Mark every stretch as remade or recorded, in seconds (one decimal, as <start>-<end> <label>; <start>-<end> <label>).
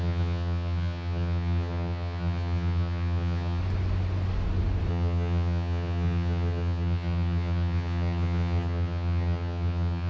0.0-3.6 remade; 3.6-4.9 recorded; 4.9-10.1 remade